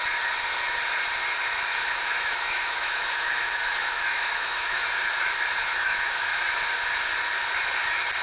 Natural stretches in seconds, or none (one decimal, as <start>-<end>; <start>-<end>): 0.0-1.7; 5.0-5.6; 6.4-8.2